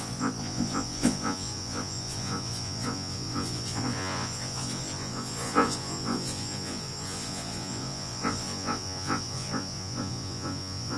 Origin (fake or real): fake